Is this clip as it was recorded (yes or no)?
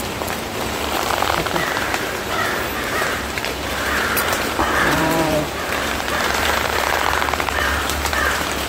no